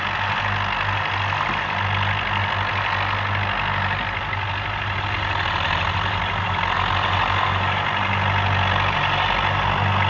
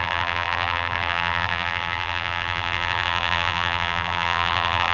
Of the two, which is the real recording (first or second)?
first